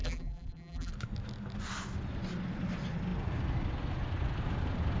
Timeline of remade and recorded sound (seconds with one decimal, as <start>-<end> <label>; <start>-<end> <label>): 0.0-0.9 remade; 0.9-5.0 recorded